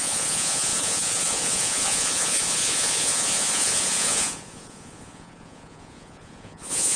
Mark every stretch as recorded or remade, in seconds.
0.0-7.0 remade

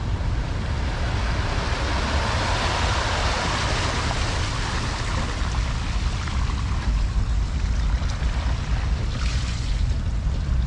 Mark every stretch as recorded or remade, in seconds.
0.0-9.3 recorded; 9.3-9.9 remade; 9.9-10.7 recorded